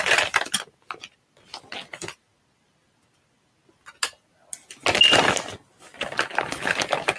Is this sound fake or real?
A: real